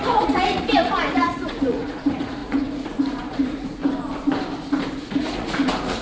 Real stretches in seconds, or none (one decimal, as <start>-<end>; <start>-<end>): 3.8-5.0